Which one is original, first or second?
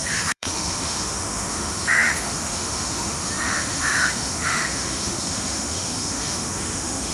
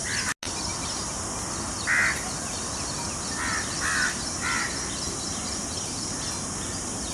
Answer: second